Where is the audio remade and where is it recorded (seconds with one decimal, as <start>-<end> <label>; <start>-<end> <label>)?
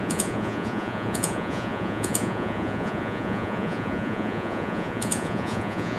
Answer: 0.0-6.0 remade